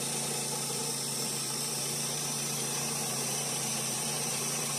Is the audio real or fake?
fake